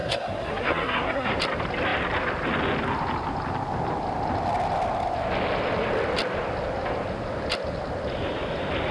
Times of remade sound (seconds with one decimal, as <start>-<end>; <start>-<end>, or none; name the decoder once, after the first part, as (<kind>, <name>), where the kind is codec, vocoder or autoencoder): 0.0-1.3 (codec, SNAC)